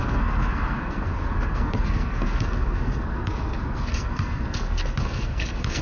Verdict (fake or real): fake